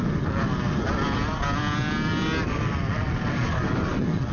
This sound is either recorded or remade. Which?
recorded